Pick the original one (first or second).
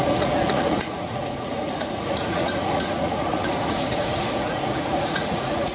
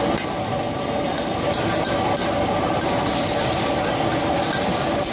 second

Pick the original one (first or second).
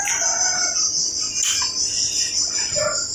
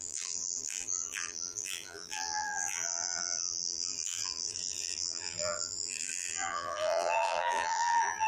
first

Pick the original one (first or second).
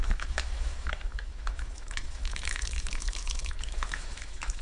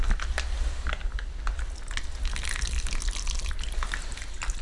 second